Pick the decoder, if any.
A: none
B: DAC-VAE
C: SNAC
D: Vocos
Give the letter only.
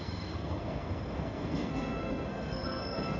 C